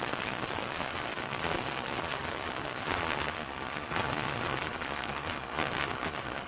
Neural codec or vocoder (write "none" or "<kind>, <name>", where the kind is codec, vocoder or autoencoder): vocoder, Vocos